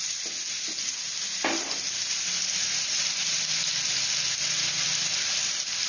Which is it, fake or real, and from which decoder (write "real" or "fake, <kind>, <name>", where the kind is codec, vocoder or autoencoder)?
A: real